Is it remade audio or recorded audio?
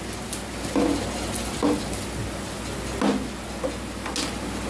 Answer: recorded